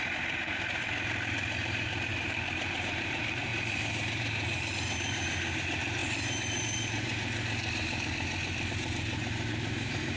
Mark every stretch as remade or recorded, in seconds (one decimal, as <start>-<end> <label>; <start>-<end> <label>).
0.0-10.2 remade